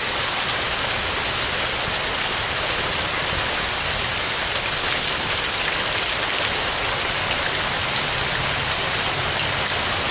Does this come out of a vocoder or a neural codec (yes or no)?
no